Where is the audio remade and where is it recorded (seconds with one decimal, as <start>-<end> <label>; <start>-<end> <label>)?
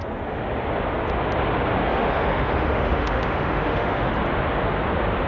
0.0-1.9 recorded; 1.9-4.1 remade; 4.1-5.3 recorded